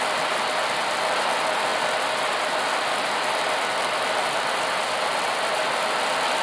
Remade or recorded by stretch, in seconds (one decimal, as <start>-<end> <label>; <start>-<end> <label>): 0.0-6.4 recorded